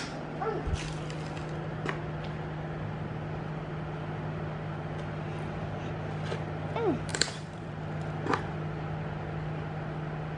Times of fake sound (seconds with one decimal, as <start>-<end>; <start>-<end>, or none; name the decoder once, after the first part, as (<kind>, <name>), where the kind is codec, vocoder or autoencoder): 7.1-7.7 (vocoder, BigVGAN v2)